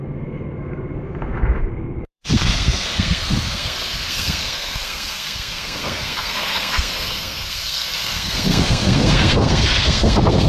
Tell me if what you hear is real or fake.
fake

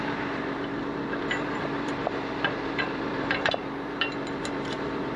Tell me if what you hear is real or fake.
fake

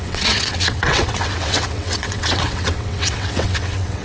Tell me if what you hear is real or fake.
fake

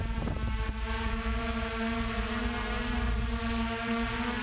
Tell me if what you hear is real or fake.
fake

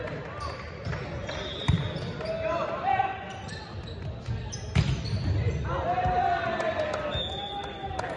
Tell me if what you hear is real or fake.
real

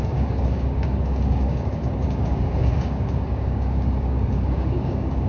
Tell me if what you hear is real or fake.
fake